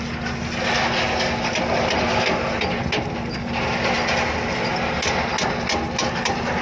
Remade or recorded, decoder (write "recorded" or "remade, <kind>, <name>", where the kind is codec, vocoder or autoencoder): recorded